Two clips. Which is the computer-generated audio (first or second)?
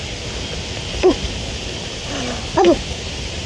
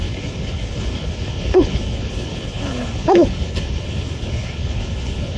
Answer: second